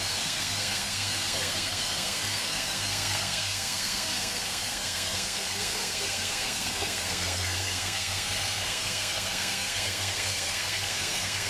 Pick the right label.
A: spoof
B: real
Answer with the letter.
A